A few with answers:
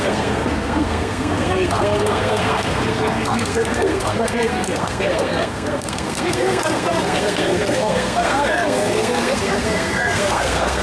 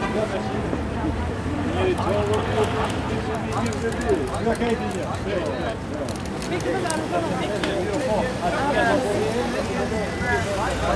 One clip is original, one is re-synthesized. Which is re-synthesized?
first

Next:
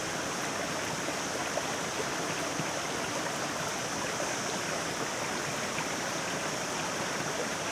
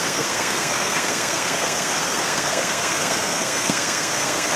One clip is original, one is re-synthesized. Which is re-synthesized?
second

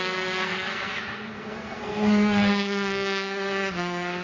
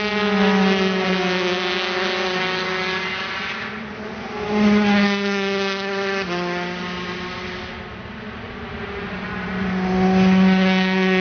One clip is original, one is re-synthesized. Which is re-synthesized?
first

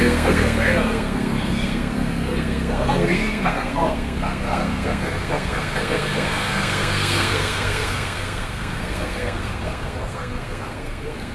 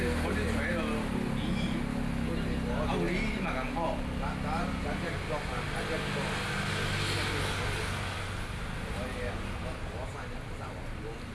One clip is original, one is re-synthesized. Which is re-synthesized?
first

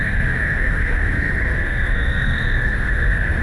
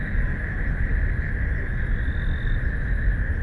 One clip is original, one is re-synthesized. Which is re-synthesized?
first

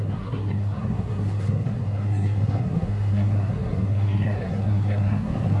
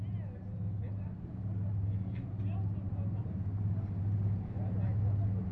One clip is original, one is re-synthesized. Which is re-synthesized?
first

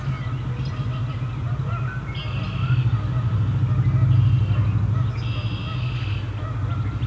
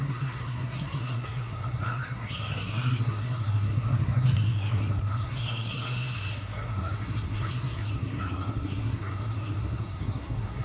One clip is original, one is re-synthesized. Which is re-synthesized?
second